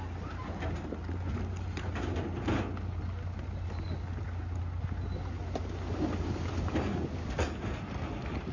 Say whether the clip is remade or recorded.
recorded